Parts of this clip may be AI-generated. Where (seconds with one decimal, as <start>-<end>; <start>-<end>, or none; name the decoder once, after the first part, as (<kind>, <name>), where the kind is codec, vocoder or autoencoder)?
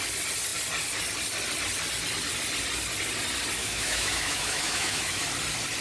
3.6-5.2 (autoencoder, DAC-VAE)